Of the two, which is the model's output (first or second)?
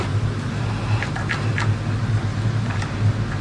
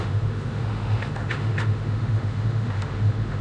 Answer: second